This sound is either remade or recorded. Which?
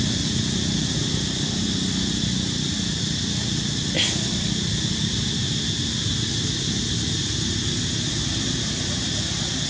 recorded